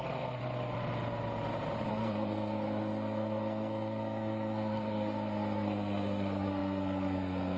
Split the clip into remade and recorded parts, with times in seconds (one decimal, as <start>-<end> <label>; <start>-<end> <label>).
0.0-0.4 remade; 0.4-1.9 recorded; 1.9-7.6 remade